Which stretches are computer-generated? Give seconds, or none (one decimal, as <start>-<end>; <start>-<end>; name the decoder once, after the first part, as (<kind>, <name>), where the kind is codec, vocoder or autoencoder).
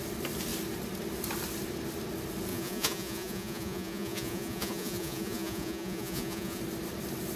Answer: 2.5-6.6 (vocoder, Vocos)